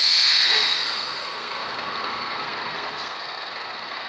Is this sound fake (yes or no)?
yes